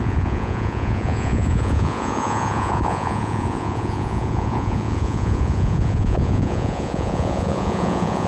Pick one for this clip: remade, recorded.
remade